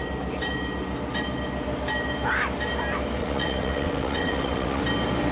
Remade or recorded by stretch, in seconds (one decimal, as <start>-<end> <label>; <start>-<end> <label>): 0.0-3.2 recorded; 3.2-4.8 remade; 4.8-5.3 recorded